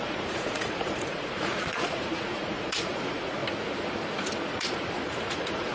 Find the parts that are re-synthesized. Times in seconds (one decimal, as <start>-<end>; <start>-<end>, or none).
0.0-3.4; 4.5-5.7